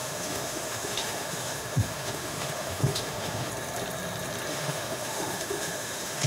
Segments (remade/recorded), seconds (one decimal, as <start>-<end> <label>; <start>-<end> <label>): 0.0-3.5 remade; 3.5-4.5 recorded; 4.5-6.3 remade